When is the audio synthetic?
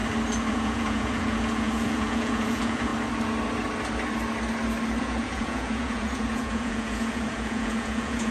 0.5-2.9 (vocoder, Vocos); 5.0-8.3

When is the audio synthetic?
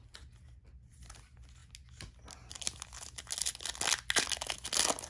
none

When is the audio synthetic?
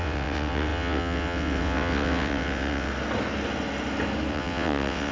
0.0-2.9 (vocoder, WaveNeXt); 4.3-5.1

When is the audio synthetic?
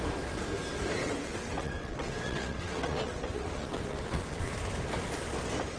1.0-4.5 (vocoder, WaveNeXt)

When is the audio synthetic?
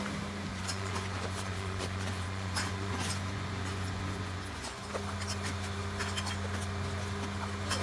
0.5-4.9 (vocoder, Vocos)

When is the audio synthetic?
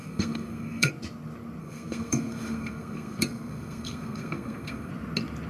0.0-0.9 (codec, SNAC); 1.6-4.9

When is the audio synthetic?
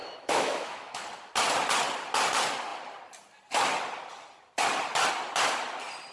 0.0-1.0 (autoencoder, DAC-VAE)